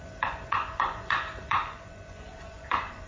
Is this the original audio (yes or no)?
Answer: no